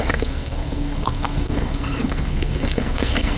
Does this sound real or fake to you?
fake